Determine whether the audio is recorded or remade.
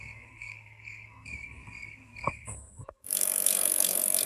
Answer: remade